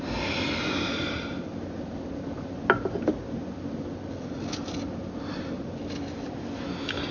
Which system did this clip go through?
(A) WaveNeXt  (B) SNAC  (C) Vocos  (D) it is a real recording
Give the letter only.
D